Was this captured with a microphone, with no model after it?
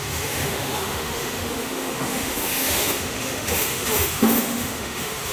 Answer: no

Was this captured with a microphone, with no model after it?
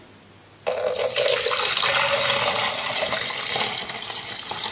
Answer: yes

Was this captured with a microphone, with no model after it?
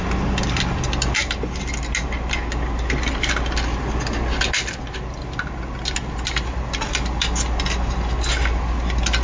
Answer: yes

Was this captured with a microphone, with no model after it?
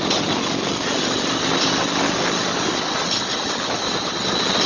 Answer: yes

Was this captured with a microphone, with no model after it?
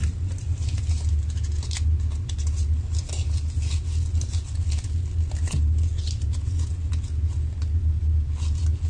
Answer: yes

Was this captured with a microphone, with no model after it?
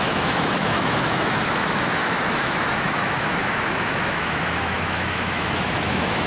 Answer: no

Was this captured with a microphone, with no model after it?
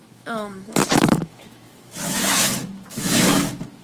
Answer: no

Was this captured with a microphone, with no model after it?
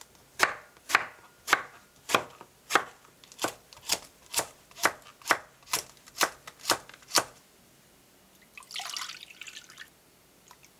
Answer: yes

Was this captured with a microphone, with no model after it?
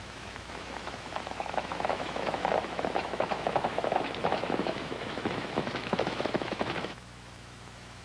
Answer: no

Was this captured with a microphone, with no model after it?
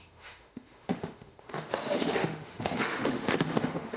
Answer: no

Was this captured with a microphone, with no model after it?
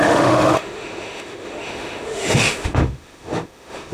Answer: no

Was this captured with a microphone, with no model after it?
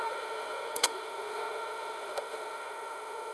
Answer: no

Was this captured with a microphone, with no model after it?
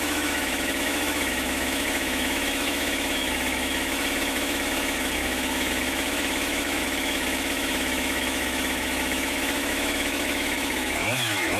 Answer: no